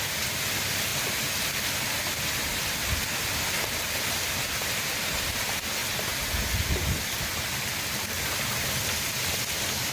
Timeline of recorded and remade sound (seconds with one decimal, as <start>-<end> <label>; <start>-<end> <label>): 0.0-9.9 recorded